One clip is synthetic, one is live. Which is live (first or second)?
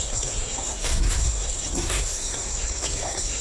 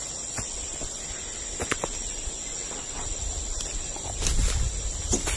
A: second